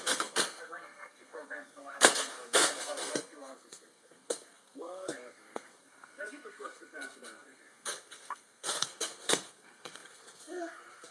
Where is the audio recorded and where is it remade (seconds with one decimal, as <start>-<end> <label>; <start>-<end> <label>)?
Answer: 0.0-11.1 remade